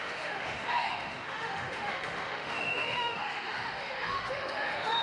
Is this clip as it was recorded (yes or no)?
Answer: no